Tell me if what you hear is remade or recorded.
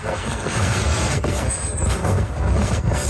remade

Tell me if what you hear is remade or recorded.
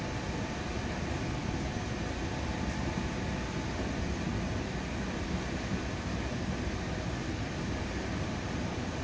recorded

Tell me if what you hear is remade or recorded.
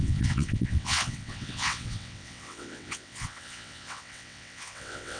remade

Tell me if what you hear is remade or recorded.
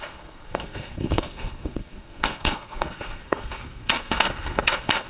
remade